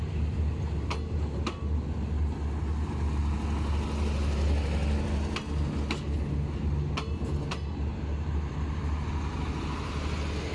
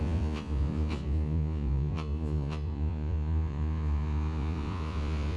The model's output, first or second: second